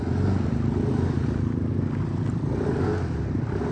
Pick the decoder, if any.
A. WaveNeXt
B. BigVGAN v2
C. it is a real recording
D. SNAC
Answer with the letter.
C